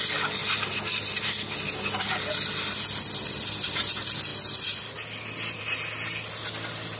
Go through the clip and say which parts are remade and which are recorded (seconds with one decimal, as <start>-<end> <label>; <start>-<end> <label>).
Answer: 0.0-7.0 recorded